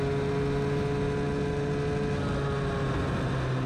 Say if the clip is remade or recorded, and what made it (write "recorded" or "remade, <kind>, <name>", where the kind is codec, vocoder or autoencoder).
recorded